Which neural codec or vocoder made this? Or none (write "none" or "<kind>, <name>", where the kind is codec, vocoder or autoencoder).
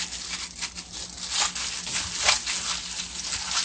none